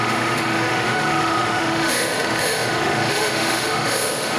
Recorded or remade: remade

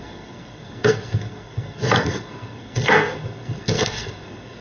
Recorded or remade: remade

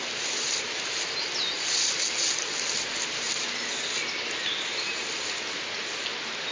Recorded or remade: recorded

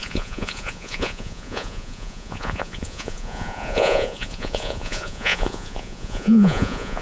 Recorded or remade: remade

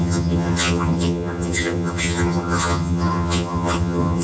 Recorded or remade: remade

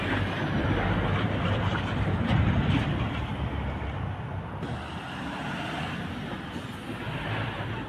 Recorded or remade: recorded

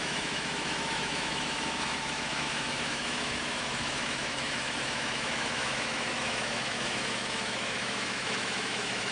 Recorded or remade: remade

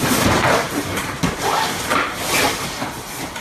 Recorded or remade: remade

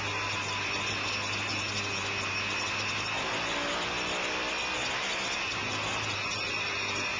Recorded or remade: recorded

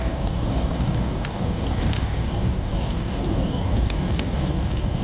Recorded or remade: remade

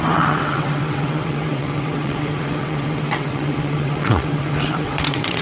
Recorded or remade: remade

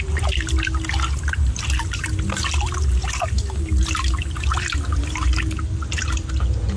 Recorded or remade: recorded